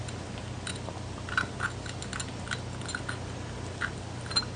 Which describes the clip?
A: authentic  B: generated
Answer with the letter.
A